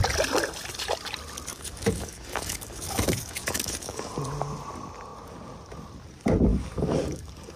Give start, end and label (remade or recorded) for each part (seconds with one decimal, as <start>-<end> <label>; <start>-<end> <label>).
0.0-1.5 recorded; 1.5-4.1 remade; 4.1-6.5 recorded; 6.5-7.6 remade